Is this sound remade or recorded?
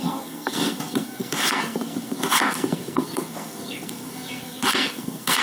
remade